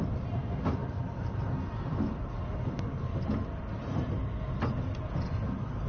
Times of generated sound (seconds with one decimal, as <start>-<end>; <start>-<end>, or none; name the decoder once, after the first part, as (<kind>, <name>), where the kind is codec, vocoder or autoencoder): none